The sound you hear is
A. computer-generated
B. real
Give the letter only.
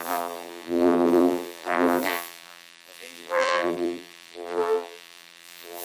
A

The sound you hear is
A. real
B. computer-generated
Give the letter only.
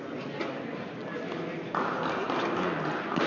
A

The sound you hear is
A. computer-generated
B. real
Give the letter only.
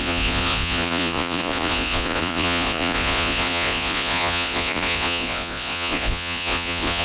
A